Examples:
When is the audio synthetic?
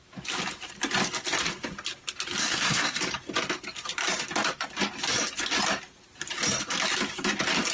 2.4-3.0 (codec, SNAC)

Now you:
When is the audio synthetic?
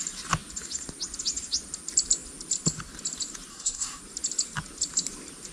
3.5-4.0 (codec, SNAC)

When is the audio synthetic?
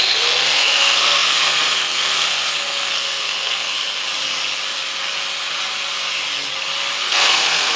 0.0-4.0 (codec, SNAC); 7.0-7.8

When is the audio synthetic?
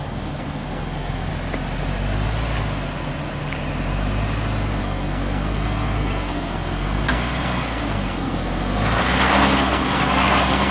0.0-1.3 (codec, SNAC); 4.8-10.7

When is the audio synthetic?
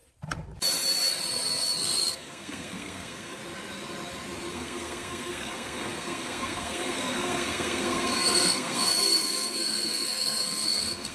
2.1-3.4 (codec, SNAC); 4.5-11.1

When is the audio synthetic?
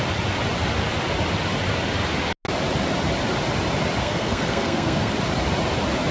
4.0-5.1 (codec, SNAC)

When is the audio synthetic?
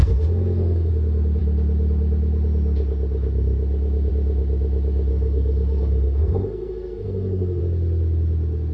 0.0-0.9 (codec, SNAC); 5.1-7.6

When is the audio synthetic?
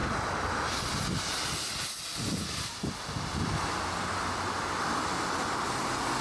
none